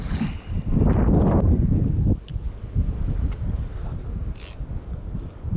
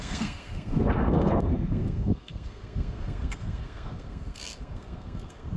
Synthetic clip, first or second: second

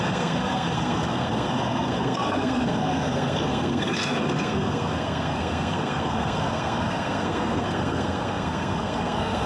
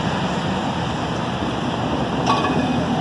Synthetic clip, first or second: first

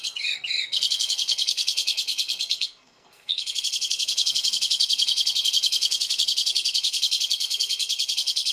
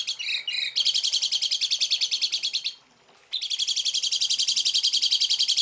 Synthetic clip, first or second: first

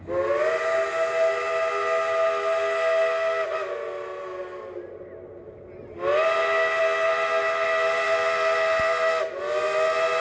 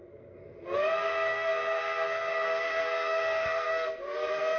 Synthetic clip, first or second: second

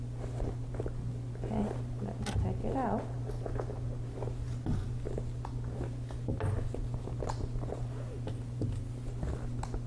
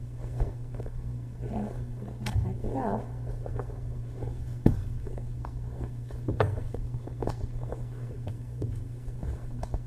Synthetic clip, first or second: second